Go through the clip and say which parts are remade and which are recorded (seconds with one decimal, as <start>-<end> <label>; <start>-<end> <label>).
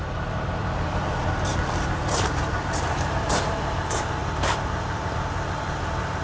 0.0-6.2 remade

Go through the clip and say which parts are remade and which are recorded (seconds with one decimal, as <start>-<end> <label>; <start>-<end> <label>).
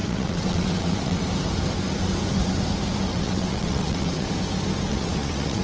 0.0-1.2 remade; 1.2-3.1 recorded; 3.1-4.3 remade; 4.3-4.9 recorded; 4.9-5.6 remade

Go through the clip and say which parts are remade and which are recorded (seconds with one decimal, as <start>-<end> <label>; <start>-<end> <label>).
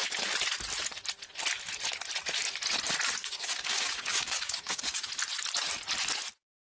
0.0-3.2 recorded; 3.2-5.1 remade; 5.1-6.6 recorded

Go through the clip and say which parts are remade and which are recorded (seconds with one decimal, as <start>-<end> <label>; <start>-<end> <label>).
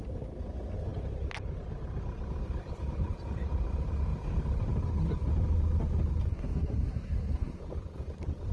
0.0-6.3 recorded; 6.3-7.6 remade; 7.6-8.5 recorded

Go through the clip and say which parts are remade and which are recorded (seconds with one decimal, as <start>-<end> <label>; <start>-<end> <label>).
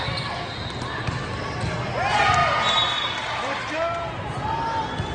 0.0-2.4 recorded; 2.4-4.1 remade; 4.1-5.1 recorded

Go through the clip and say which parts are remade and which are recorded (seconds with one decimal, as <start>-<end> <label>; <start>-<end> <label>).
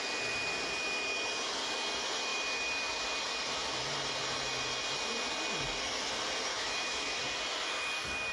0.0-6.5 recorded; 6.5-7.2 remade; 7.2-8.3 recorded